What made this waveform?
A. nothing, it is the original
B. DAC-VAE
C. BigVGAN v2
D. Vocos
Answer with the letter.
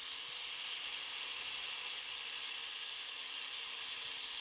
A